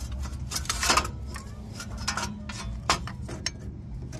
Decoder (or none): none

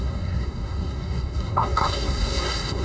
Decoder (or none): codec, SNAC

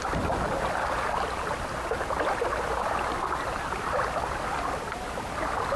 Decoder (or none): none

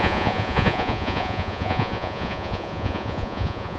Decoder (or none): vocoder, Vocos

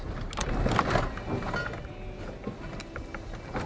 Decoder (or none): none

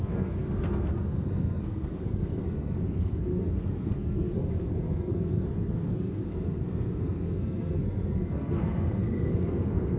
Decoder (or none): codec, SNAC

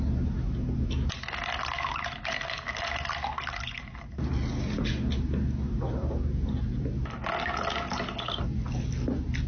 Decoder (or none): none